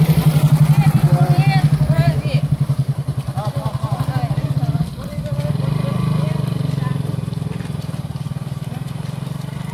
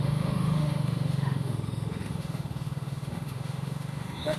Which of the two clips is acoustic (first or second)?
first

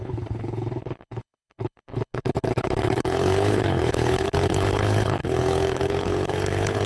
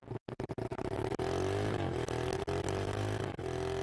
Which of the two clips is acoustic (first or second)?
second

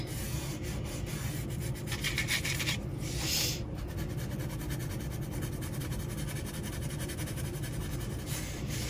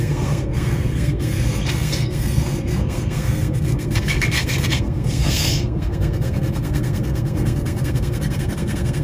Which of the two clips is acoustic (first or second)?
first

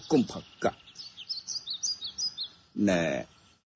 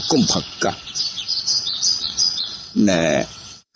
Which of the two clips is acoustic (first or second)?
first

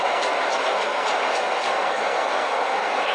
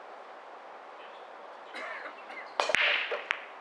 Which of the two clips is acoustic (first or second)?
second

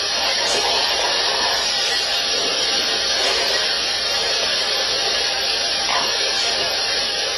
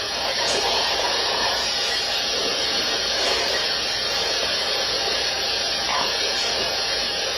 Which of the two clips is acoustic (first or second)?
first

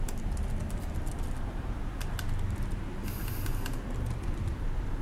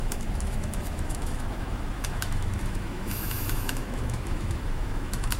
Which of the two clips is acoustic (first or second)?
first